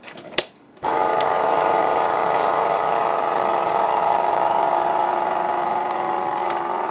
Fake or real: fake